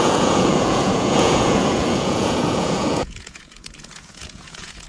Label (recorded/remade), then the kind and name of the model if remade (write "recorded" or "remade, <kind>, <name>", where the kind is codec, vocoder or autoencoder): remade, vocoder, Vocos